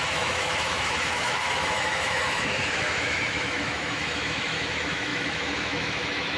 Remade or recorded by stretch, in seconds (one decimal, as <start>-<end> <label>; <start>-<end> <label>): 0.0-6.4 remade